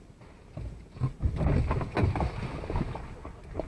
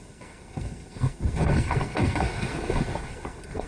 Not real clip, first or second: second